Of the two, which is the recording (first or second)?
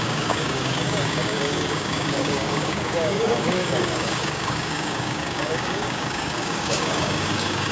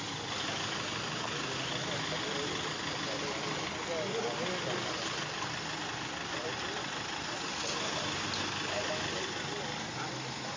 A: second